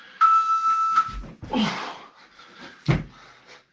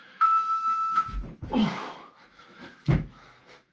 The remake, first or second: second